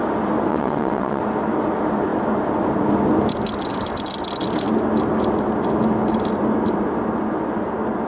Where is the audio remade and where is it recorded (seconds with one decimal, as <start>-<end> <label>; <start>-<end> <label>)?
0.0-0.5 recorded; 0.5-1.2 remade; 1.2-8.1 recorded